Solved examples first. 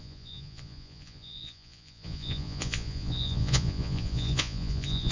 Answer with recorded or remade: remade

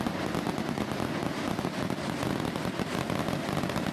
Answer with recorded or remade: recorded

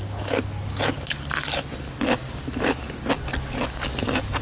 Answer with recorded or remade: recorded